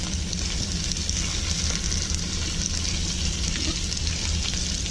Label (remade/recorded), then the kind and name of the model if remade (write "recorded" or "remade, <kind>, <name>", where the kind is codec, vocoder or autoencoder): recorded